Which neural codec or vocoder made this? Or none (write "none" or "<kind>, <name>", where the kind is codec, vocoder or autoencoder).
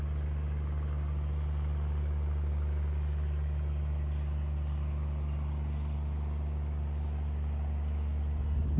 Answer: none